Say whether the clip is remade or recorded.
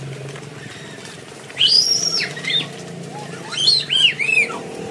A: recorded